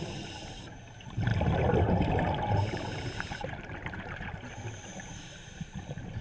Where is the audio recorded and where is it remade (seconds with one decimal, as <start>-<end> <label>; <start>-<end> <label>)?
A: 0.0-1.3 remade; 1.3-2.2 recorded; 2.2-6.2 remade